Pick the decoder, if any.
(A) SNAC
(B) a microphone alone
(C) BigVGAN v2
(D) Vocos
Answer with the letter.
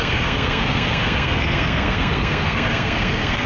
A